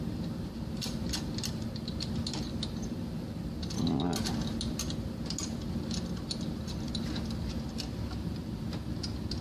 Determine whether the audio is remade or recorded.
recorded